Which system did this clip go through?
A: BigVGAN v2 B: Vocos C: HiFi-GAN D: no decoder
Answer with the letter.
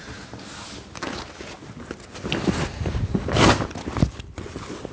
D